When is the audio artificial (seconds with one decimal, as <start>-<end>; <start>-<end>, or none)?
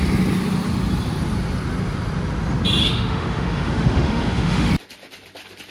2.8-4.7